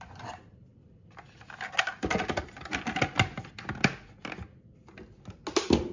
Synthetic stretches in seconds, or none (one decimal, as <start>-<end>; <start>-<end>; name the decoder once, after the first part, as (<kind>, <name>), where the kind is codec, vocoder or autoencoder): none